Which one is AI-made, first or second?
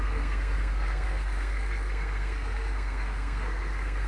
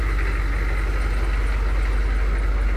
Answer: first